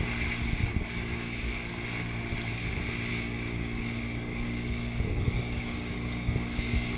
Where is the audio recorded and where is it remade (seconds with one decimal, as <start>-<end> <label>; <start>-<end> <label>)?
0.0-0.7 recorded; 0.7-1.7 remade; 1.7-3.1 recorded; 3.1-7.0 remade